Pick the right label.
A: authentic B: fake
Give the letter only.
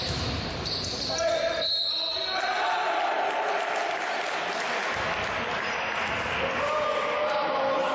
A